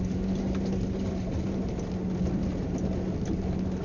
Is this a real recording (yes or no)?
yes